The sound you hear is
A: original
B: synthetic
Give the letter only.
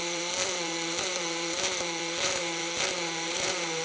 B